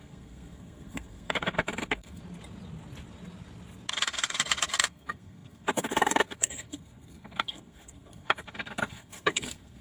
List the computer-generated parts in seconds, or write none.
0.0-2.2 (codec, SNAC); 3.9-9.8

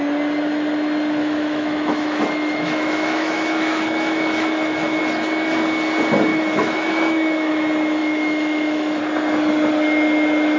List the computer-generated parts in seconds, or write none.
1.2-5.0 (autoencoder, DAC-VAE); 6.3-7.5; 8.0-9.0

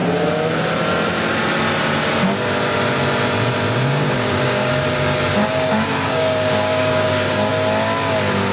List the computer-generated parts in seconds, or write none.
3.9-4.7 (codec, DAC); 5.3-7.5